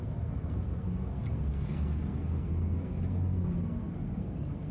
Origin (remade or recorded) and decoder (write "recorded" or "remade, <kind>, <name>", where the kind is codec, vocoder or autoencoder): remade, codec, SNAC